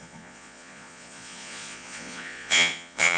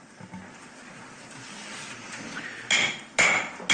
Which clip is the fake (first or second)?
first